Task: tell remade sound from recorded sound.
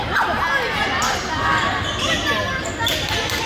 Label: recorded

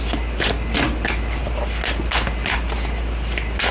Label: recorded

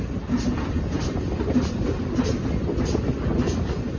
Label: recorded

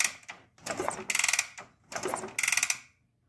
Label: recorded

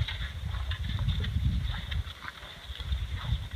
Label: recorded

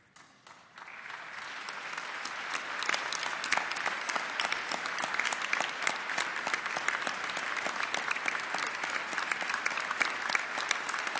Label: recorded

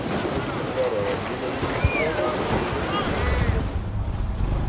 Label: recorded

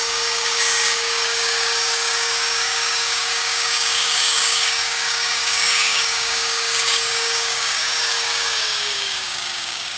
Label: remade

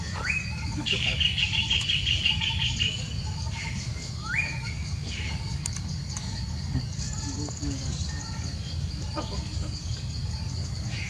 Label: remade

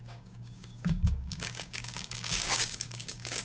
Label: remade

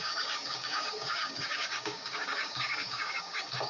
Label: remade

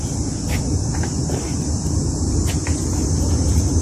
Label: recorded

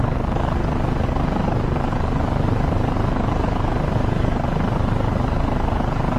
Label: remade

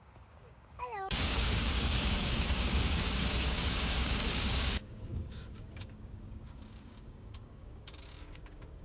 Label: remade